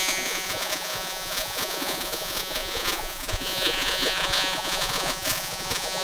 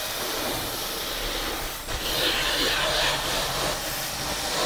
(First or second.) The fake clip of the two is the first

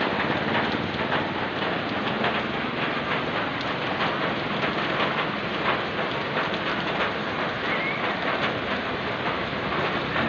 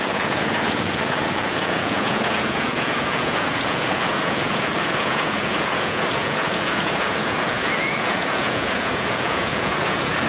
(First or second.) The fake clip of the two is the second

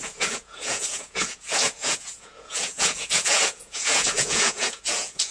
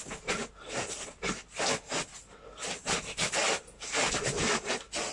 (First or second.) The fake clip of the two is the first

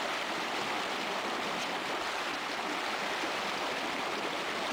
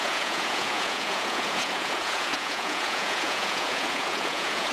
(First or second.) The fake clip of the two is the second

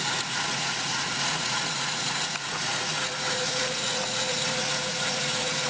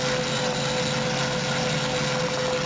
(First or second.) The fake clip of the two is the first